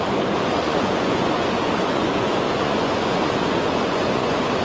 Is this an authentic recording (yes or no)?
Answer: no